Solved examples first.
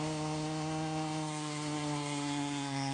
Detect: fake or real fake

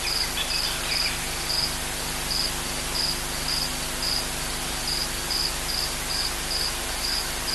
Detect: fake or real real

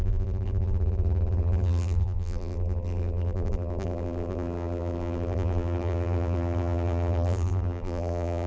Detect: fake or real fake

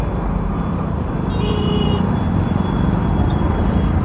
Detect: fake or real real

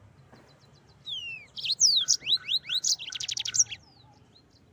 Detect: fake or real fake